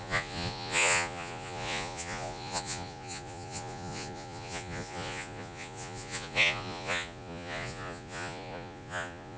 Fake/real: fake